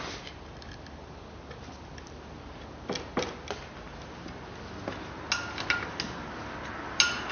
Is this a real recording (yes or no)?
yes